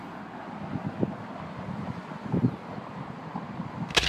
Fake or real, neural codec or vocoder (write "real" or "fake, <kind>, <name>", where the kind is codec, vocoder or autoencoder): real